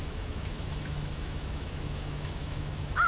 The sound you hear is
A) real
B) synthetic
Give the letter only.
B